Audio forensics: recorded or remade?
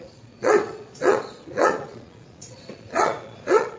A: remade